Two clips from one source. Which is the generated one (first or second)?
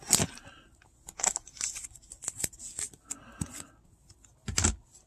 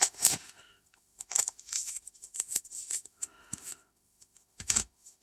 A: second